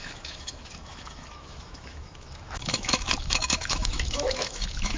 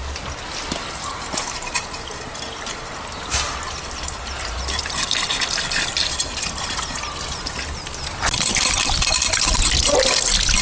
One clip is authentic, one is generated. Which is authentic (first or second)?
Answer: second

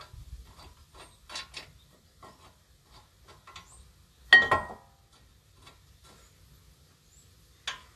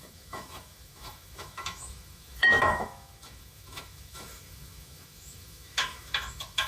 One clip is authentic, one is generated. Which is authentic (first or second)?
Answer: first